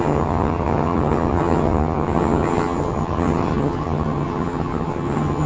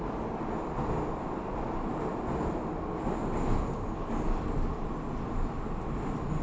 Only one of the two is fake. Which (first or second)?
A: first